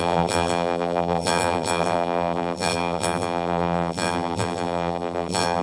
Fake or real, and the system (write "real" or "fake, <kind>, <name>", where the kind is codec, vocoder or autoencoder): fake, vocoder, BigVGAN v2